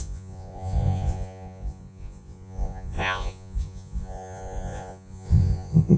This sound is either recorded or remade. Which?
remade